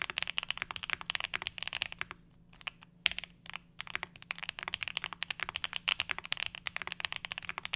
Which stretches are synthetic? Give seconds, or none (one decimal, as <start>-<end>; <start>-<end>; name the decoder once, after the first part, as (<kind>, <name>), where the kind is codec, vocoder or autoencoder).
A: 4.4-4.9 (vocoder, BigVGAN v2); 5.9-6.8